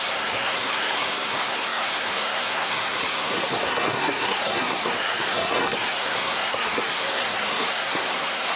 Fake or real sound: fake